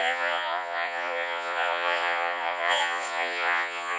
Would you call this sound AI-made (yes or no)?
yes